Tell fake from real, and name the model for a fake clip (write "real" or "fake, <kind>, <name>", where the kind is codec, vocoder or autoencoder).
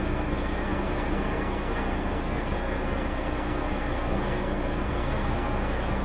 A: fake, codec, SNAC